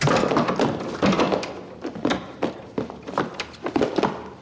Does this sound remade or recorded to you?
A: remade